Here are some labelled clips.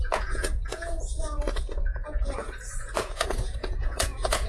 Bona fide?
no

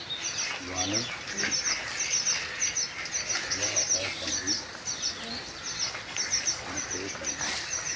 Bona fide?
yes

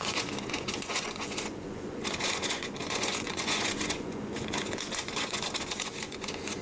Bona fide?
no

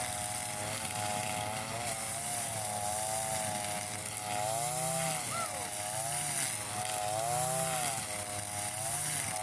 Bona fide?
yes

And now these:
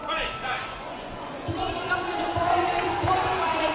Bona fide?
no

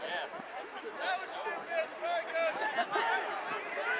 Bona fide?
yes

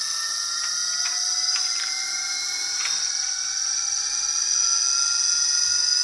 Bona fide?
yes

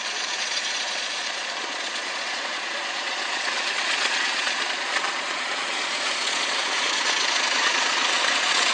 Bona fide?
no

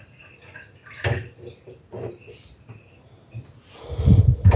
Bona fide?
yes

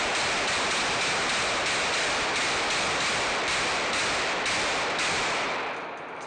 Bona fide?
yes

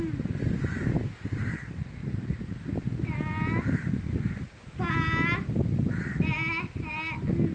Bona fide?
yes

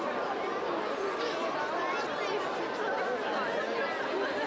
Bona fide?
yes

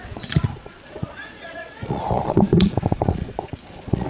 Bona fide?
no